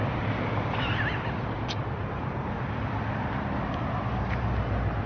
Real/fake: real